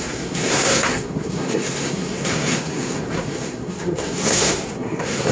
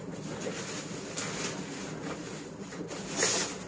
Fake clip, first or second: first